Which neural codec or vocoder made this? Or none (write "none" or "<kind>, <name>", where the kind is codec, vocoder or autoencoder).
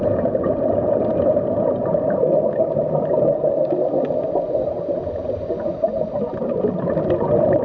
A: none